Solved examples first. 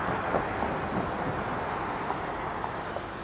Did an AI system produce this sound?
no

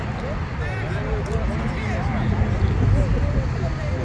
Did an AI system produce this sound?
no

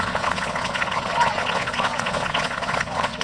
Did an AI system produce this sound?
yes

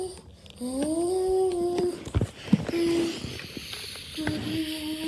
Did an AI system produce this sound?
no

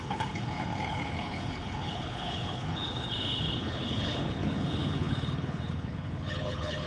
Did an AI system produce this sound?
yes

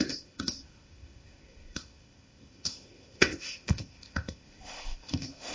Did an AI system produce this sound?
yes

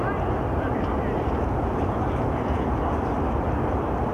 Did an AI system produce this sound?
no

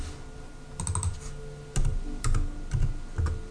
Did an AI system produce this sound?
no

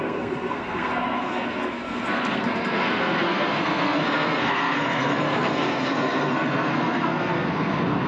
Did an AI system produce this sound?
yes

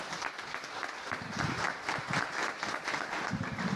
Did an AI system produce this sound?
no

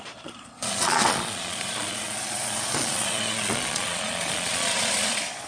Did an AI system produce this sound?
yes